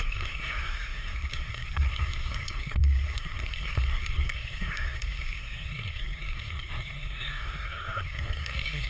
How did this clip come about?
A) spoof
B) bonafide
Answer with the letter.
A